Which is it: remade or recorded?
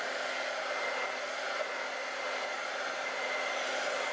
recorded